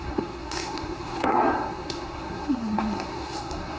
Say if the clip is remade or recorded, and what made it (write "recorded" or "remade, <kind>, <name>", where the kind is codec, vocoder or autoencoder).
remade, codec, SNAC